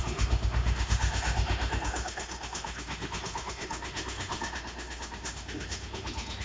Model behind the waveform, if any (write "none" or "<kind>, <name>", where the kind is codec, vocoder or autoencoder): autoencoder, DAC-VAE